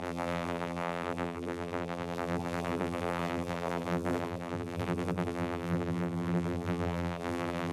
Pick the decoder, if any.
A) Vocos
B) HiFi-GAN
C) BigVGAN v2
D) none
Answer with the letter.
C